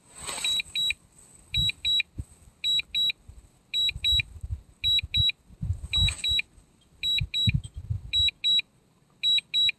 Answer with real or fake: real